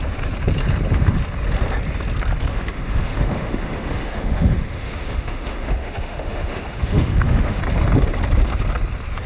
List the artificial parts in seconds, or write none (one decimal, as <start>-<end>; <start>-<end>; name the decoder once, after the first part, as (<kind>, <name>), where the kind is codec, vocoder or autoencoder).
2.5-7.6 (autoencoder, DAC-VAE)